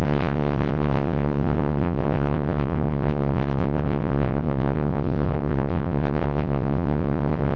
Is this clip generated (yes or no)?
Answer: yes